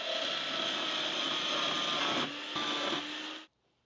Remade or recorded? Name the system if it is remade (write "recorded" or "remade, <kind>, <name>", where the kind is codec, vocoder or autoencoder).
recorded